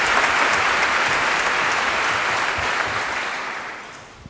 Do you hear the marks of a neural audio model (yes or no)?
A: yes